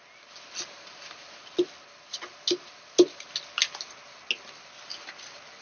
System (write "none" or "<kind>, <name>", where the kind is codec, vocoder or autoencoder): none